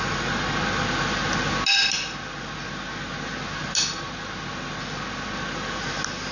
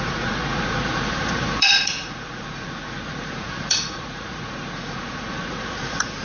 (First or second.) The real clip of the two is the first